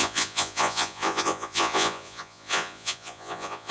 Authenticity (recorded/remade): remade